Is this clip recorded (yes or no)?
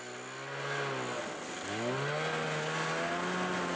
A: yes